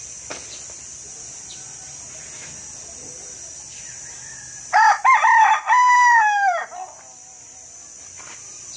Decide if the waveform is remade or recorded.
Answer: recorded